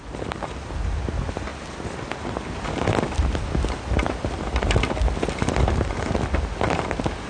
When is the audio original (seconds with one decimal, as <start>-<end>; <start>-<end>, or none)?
0.0-7.3